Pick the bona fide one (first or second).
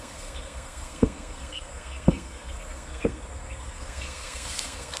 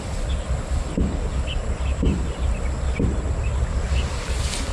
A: second